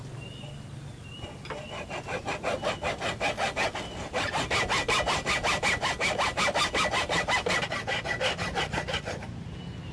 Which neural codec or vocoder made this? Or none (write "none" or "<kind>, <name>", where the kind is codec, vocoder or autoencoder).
none